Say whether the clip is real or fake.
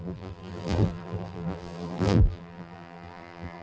fake